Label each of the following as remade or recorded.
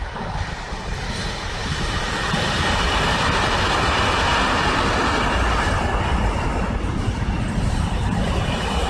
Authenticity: recorded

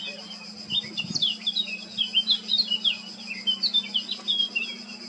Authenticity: recorded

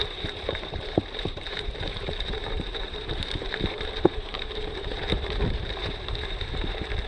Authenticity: remade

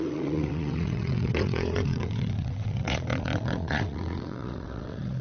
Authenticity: remade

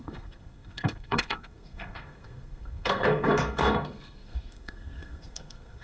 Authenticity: remade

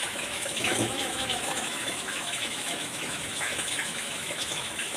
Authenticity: remade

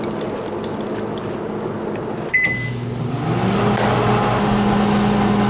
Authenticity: recorded